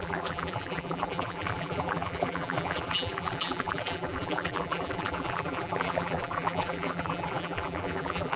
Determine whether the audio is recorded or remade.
remade